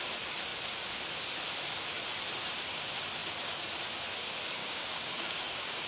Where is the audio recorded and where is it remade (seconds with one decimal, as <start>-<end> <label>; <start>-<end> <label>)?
0.0-4.6 recorded; 4.6-5.9 remade